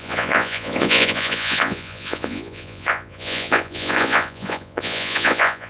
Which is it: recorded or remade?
remade